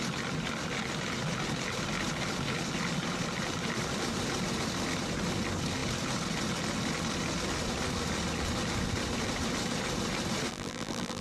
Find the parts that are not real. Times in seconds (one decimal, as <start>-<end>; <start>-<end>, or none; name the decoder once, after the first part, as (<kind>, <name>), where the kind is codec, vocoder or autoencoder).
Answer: 10.5-11.2 (vocoder, BigVGAN v2)